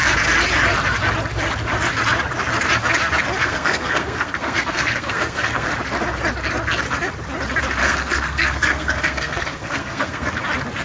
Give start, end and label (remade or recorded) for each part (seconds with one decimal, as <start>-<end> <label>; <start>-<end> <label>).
0.0-3.4 recorded; 3.4-5.7 remade; 5.7-7.8 recorded; 7.8-10.4 remade; 10.4-10.8 recorded